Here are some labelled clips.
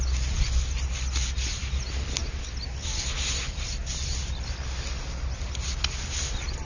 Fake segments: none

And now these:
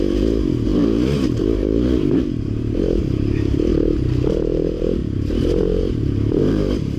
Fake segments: 0.0-3.7 (vocoder, BigVGAN v2); 4.3-7.0